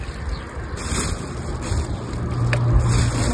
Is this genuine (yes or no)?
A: yes